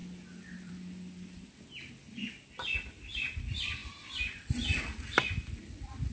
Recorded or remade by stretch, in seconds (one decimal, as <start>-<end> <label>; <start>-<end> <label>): 0.0-6.1 recorded